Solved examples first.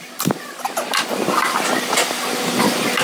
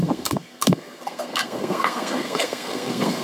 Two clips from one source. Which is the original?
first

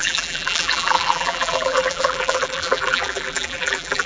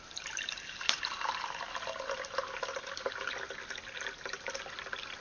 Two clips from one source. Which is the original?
second